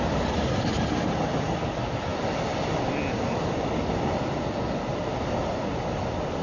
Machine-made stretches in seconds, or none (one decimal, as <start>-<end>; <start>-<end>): none